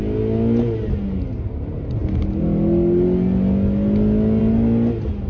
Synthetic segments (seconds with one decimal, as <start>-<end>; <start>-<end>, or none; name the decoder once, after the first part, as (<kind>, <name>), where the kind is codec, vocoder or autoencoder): none